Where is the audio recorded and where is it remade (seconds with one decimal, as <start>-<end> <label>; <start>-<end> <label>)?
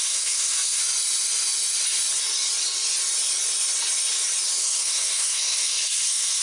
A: 0.0-0.8 remade; 0.8-4.6 recorded; 4.6-6.4 remade